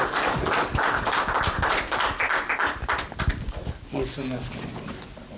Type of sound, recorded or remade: recorded